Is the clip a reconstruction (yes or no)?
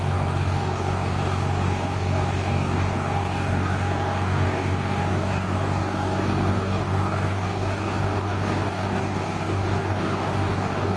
yes